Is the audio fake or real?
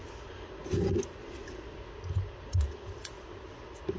real